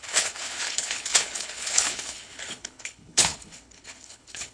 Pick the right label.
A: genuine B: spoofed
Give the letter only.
B